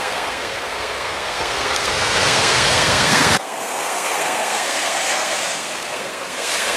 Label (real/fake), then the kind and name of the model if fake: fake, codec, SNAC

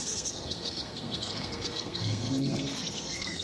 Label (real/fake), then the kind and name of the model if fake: fake, codec, SNAC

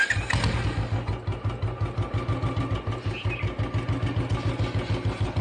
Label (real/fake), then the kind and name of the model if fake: real